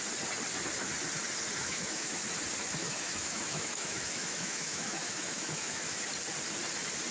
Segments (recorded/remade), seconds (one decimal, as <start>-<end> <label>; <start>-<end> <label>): 0.0-1.6 recorded; 1.6-2.2 remade; 2.2-2.8 recorded; 2.8-6.0 remade; 6.0-7.1 recorded